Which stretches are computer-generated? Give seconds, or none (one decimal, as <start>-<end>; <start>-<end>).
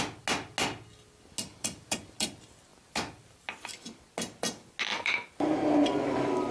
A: 1.5-2.0; 2.7-3.7; 4.9-5.5